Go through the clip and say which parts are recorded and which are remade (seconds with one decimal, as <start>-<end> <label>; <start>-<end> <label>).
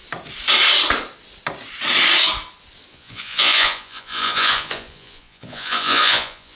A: 0.0-2.9 recorded; 2.9-6.6 remade